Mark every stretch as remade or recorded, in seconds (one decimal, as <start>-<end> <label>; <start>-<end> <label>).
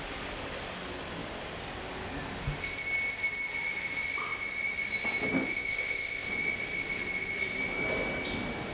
0.0-5.5 recorded; 5.5-6.3 remade; 6.3-8.7 recorded